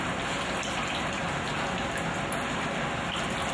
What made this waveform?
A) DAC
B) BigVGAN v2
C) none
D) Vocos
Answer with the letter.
C